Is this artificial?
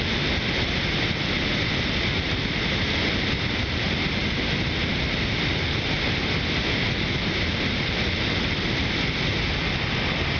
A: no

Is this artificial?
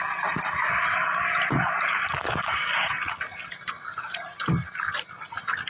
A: no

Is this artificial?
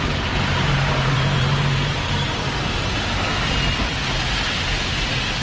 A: yes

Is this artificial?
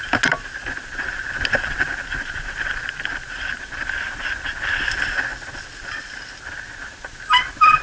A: no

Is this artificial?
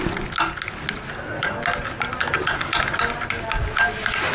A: no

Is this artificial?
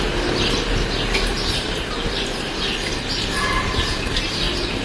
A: no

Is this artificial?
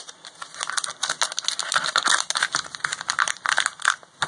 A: no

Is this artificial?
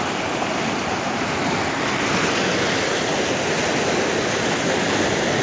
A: no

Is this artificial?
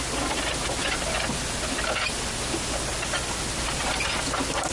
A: no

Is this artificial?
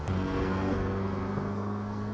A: yes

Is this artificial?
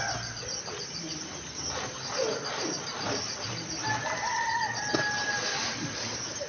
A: no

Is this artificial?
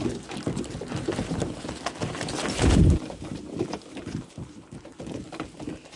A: no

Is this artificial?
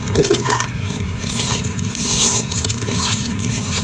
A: yes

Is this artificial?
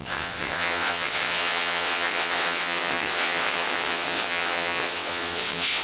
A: yes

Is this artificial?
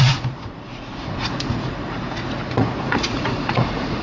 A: yes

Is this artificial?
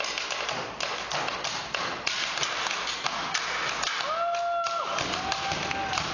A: no